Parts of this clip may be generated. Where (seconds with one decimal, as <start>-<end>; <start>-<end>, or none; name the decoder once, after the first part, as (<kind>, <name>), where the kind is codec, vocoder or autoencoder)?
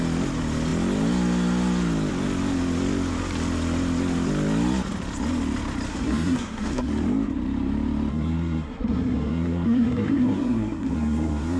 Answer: 5.9-6.9 (codec, SNAC); 8.1-11.6